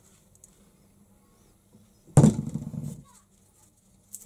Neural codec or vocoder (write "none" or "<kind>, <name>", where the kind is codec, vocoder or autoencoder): none